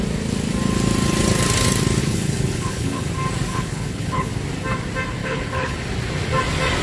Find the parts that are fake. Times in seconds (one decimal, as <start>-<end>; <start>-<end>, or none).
2.0-3.1; 3.5-4.3; 5.2-5.8